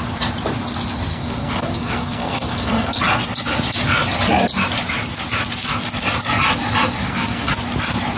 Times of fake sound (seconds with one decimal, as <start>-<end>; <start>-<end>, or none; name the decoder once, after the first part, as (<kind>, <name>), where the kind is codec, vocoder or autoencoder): 1.1-3.0 (codec, SNAC); 7.0-7.5